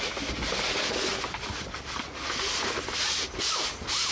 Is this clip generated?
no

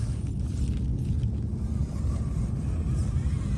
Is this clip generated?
no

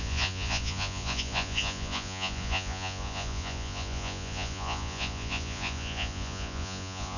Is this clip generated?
yes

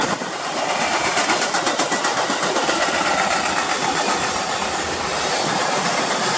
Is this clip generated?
no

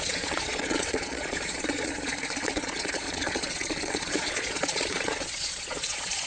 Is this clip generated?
yes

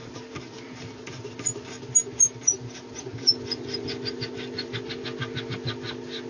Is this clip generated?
no